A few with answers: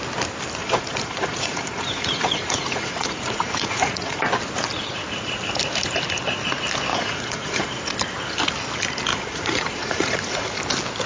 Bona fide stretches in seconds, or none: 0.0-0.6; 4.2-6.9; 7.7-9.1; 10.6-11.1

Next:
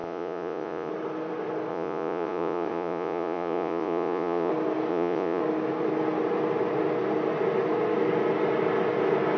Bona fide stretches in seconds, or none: 0.9-1.7; 4.5-4.9; 5.4-9.4

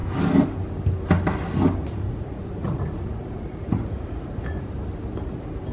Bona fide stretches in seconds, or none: 0.0-1.8; 4.7-5.7

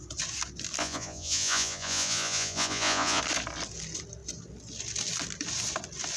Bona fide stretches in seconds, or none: 0.0-0.8; 3.2-6.2